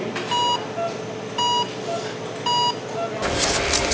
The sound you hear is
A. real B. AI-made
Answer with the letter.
A